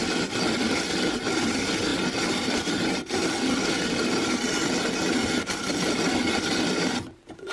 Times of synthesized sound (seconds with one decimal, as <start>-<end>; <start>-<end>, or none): none